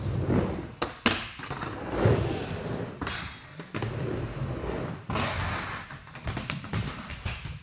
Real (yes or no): yes